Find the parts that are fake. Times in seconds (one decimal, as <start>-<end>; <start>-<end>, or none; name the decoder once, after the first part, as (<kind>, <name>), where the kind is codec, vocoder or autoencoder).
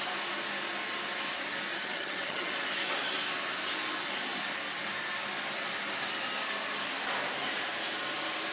1.7-2.5 (vocoder, HiFi-GAN)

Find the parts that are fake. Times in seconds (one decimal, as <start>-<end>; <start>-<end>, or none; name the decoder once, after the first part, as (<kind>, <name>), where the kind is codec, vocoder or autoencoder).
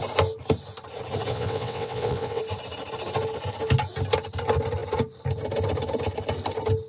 1.3-2.4 (vocoder, WaveNeXt)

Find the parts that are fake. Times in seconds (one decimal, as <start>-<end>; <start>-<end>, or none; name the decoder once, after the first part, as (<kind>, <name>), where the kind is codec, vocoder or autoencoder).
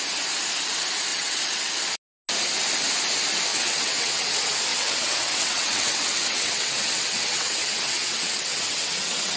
1.1-1.7 (vocoder, WaveNeXt); 3.5-4.3; 4.7-9.4